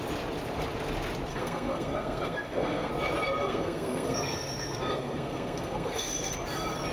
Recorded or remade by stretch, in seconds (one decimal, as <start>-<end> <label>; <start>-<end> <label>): 0.0-1.3 recorded; 1.3-2.9 remade; 2.9-3.4 recorded; 3.4-6.3 remade; 6.3-6.9 recorded

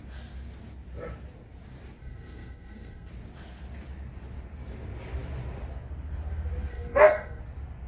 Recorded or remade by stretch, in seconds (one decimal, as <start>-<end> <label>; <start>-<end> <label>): 0.0-2.0 recorded; 2.0-3.1 remade; 3.1-6.7 recorded; 6.7-7.4 remade; 7.4-7.9 recorded

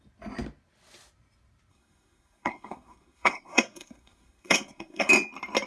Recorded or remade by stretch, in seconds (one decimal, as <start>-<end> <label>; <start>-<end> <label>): 0.0-1.7 recorded; 1.7-5.1 remade; 5.1-5.7 recorded

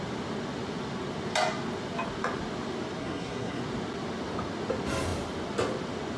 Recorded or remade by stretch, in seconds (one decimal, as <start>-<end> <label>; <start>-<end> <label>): 0.0-3.0 recorded; 3.0-3.6 remade; 3.6-6.2 recorded

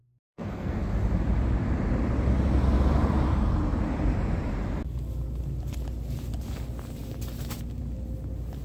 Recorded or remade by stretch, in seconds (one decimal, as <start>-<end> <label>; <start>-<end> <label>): 0.0-0.8 remade; 0.8-8.6 recorded